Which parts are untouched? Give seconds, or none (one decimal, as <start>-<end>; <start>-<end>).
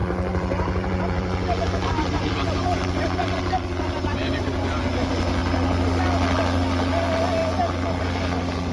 4.8-8.7